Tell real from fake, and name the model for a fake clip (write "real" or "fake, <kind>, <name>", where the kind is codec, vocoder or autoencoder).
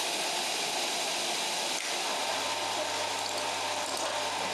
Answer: real